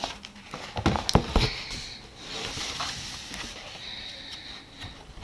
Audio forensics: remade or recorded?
recorded